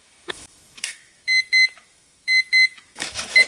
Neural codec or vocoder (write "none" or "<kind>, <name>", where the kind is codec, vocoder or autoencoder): autoencoder, DAC-VAE